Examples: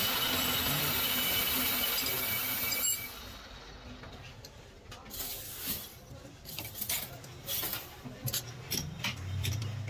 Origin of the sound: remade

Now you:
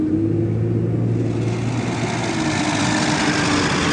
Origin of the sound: recorded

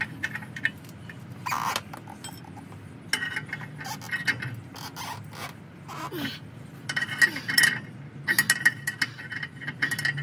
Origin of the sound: recorded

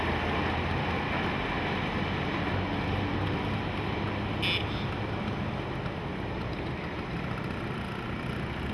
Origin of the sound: recorded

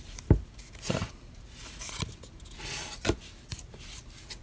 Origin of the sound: recorded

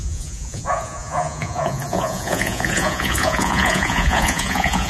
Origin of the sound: remade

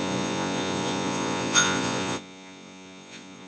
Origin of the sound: remade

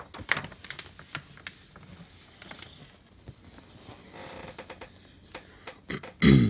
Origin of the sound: recorded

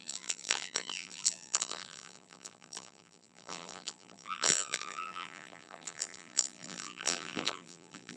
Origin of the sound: remade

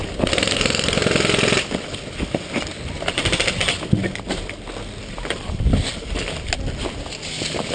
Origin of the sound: recorded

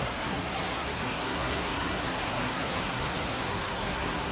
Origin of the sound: remade